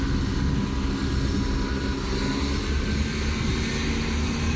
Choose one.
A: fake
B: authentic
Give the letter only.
B